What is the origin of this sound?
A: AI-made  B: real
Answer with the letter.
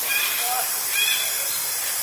B